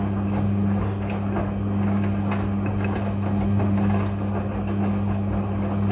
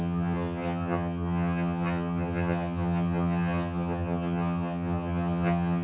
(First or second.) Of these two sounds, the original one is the first